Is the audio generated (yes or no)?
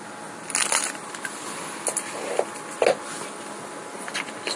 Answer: no